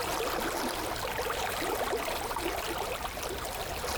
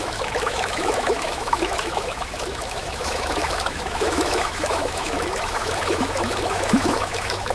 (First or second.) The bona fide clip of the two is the first